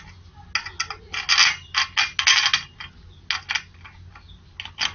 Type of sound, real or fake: real